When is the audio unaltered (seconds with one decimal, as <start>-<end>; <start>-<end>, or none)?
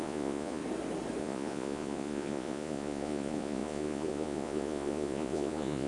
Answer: 0.6-1.2